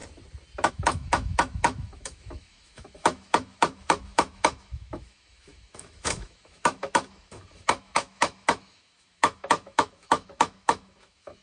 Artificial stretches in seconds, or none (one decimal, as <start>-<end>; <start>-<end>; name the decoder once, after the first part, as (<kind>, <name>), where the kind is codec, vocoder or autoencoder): 0.7-11.4 (autoencoder, DAC-VAE)